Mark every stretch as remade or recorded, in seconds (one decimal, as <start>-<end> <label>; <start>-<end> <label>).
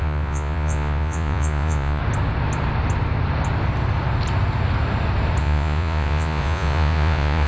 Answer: 0.0-2.0 remade; 2.0-5.4 recorded; 5.4-7.5 remade